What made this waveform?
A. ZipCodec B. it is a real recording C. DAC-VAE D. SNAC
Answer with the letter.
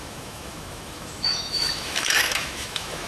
C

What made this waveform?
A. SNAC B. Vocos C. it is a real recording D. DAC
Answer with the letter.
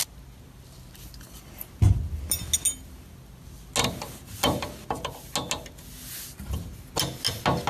C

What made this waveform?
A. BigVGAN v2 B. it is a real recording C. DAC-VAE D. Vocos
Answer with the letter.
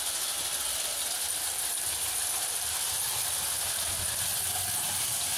B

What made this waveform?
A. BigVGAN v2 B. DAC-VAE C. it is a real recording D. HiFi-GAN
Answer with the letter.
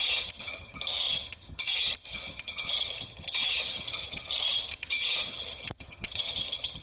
D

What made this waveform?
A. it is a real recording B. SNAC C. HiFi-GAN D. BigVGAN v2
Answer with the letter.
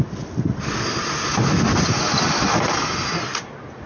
A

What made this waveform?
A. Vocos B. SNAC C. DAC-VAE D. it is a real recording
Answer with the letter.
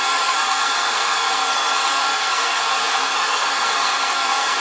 B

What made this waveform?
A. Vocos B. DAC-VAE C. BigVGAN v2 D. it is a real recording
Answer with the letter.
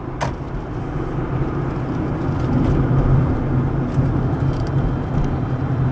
D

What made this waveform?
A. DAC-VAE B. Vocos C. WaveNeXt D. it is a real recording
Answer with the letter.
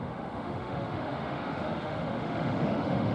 A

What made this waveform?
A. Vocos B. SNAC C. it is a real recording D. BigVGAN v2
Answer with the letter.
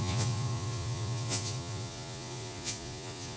A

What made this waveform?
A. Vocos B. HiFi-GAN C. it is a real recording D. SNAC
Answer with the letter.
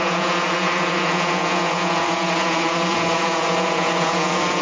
A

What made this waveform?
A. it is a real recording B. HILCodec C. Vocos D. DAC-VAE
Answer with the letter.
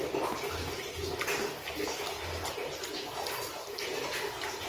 A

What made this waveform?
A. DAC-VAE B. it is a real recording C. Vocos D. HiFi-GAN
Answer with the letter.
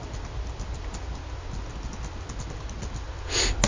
B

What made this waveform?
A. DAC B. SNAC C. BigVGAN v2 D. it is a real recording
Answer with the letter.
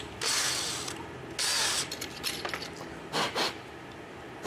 D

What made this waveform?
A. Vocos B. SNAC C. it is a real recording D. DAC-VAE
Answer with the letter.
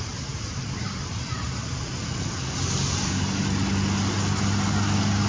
C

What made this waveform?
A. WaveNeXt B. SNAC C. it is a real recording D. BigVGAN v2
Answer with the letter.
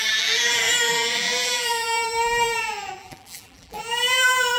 D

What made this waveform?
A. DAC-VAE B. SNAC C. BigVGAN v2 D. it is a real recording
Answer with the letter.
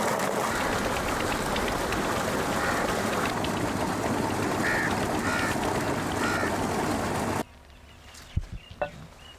D